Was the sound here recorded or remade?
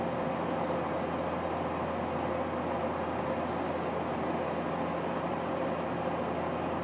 recorded